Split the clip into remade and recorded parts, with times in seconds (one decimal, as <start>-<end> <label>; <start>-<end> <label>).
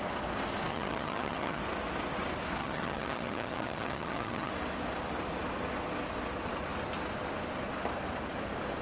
0.0-0.7 recorded; 0.7-1.6 remade; 1.6-2.6 recorded; 2.6-4.5 remade; 4.5-8.8 recorded